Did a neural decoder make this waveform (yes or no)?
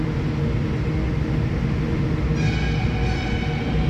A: no